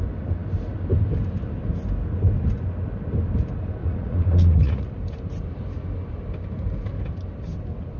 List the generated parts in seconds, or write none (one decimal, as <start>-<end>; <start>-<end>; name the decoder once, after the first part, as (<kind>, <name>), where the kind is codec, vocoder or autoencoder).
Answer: 3.8-4.9 (vocoder, Vocos)